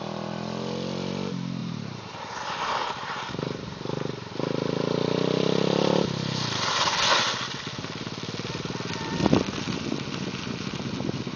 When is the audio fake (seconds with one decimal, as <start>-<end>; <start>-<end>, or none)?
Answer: 1.6-4.3

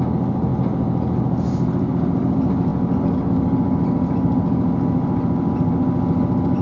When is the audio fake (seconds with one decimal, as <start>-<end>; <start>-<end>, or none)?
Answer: none